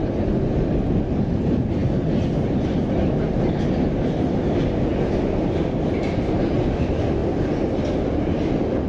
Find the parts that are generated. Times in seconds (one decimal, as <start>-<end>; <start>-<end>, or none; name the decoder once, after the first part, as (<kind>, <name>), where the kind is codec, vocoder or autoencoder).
none